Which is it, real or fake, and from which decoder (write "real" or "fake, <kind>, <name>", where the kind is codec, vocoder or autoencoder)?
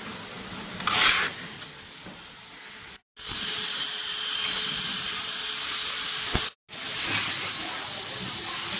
real